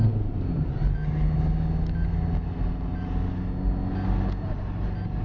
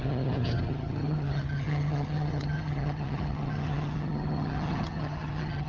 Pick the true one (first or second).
first